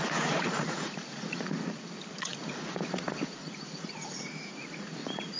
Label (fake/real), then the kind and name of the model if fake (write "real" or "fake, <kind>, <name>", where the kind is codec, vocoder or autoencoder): fake, vocoder, Vocos